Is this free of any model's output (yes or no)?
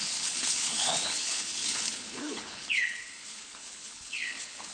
no